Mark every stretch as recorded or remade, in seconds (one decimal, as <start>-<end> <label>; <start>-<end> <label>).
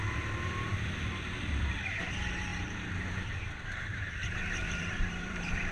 0.0-0.7 remade; 0.7-1.5 recorded; 1.5-5.7 remade